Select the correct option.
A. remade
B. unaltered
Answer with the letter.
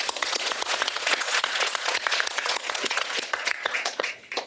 A